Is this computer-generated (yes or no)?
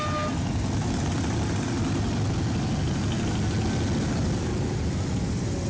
no